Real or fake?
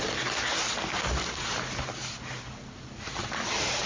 real